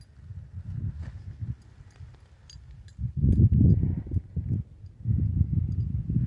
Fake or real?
real